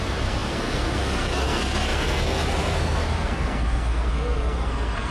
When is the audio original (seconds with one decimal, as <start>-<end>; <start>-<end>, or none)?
none